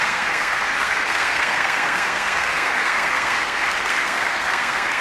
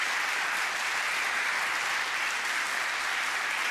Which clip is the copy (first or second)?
first